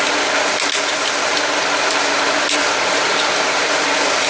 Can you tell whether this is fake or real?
real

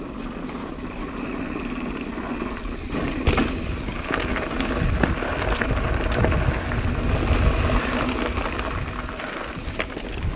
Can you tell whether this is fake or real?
real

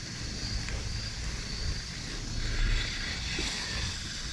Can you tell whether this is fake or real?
real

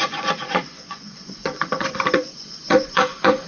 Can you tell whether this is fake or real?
fake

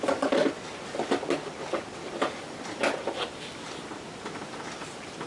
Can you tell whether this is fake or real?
real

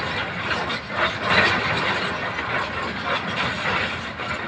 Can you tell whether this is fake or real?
real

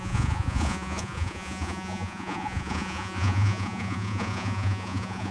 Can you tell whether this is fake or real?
fake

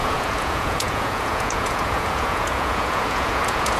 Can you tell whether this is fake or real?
fake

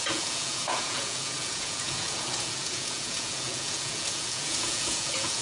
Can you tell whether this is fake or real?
fake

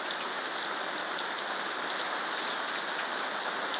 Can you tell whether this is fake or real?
real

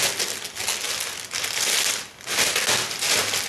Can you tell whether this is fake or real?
real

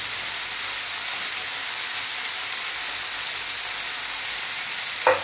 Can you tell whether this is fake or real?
real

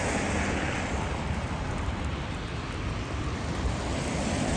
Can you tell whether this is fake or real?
real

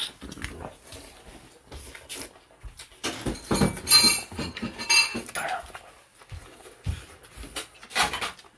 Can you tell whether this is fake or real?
real